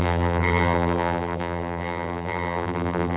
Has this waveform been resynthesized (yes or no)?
yes